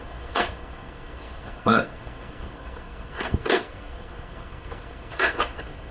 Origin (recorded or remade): remade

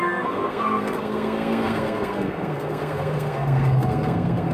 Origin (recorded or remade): remade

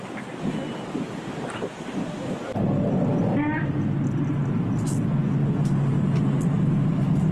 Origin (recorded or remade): recorded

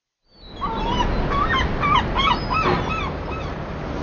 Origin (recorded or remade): recorded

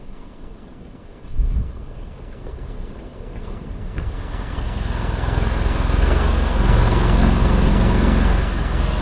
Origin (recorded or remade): remade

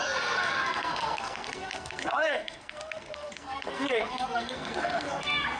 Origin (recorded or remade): remade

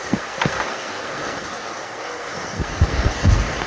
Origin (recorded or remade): remade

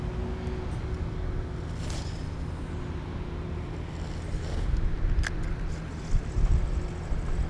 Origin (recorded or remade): recorded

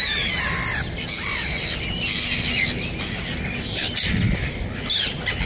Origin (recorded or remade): recorded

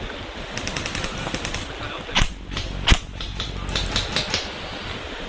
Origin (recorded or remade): recorded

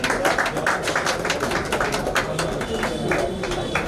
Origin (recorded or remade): recorded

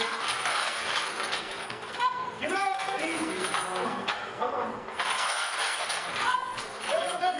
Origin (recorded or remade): remade